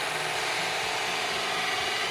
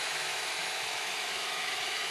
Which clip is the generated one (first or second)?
second